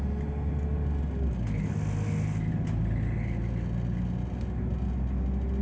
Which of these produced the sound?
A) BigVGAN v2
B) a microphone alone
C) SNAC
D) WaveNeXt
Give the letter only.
B